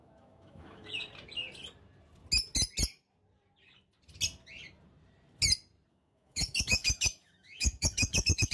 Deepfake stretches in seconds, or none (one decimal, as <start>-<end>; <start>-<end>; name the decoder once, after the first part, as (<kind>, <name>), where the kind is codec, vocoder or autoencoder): 0.0-1.0 (autoencoder, DAC-VAE); 5.9-8.5